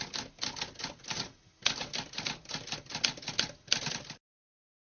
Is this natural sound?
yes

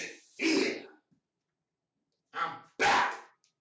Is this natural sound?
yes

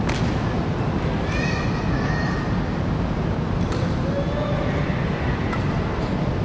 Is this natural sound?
yes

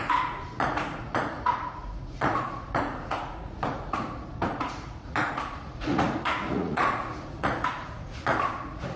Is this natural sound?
no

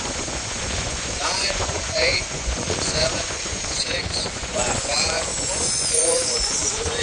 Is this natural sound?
no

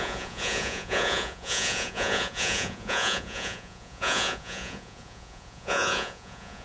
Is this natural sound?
no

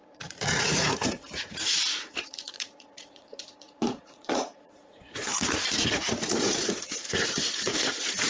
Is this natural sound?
no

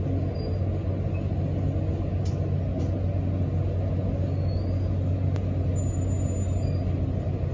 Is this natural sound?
yes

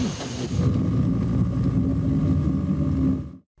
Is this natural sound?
yes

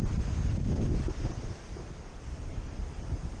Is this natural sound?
yes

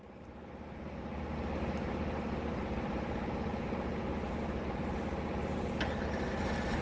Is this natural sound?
yes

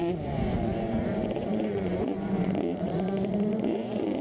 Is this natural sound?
no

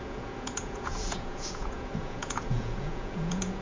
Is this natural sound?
no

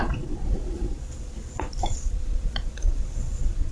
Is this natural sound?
no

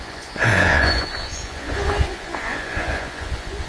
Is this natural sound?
no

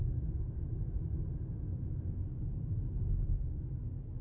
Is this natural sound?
yes